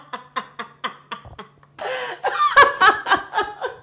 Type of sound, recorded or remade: recorded